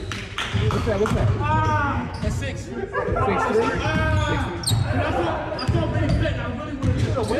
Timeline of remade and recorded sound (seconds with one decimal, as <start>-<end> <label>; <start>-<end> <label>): 0.0-0.6 recorded; 0.6-2.3 remade; 2.3-7.4 recorded